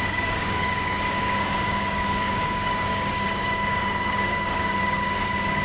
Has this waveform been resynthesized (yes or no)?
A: yes